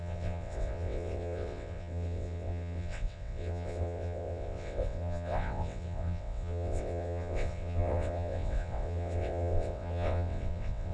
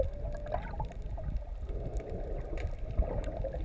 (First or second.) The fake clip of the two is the first